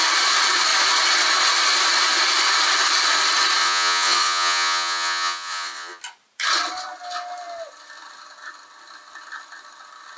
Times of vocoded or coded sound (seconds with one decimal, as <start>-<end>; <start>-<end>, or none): 3.6-6.0